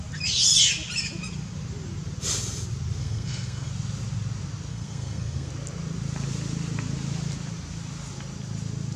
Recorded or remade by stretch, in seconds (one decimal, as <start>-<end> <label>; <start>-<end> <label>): 0.0-3.0 recorded; 3.0-3.7 remade; 3.7-4.7 recorded; 4.7-5.5 remade; 5.5-9.0 recorded